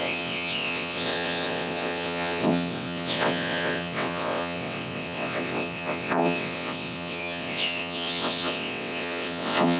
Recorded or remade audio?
remade